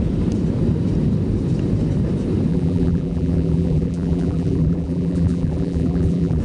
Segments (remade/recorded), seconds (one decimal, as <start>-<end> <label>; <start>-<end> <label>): 0.0-2.5 recorded; 2.5-6.4 remade